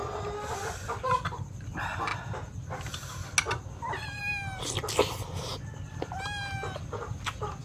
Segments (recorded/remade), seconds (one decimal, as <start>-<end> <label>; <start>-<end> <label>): 0.0-7.6 recorded

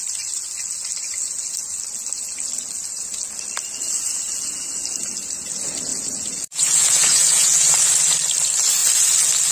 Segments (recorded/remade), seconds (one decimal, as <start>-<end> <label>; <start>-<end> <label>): 0.0-5.9 recorded; 5.9-7.9 remade; 7.9-9.5 recorded

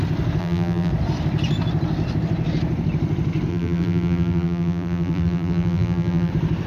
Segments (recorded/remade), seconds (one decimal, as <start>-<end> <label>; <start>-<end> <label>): 0.0-0.4 recorded; 0.4-0.9 remade; 0.9-3.5 recorded; 3.5-6.3 remade; 6.3-6.7 recorded